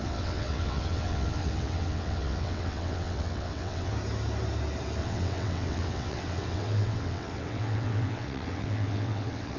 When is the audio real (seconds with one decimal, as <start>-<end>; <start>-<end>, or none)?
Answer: 3.9-5.0